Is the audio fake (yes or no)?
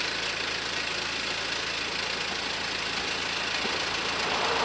no